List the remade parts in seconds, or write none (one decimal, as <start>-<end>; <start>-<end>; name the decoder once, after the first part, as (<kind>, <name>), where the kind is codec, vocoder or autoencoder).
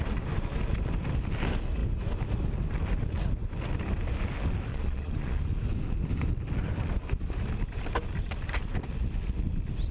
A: 4.7-5.4 (vocoder, Vocos)